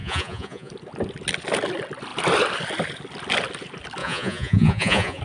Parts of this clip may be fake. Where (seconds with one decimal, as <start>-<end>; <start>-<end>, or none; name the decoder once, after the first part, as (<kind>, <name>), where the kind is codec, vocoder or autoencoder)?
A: 0.0-0.7 (vocoder, Vocos); 4.0-5.2